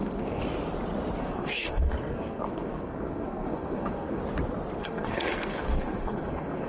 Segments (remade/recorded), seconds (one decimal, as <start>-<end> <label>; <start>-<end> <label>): 0.0-0.4 remade; 0.4-1.2 recorded; 1.2-4.2 remade; 4.2-4.8 recorded; 4.8-6.7 remade